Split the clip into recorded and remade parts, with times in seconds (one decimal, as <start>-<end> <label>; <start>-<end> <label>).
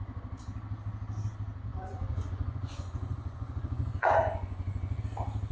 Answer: 0.0-1.7 recorded; 1.7-5.0 remade; 5.0-5.5 recorded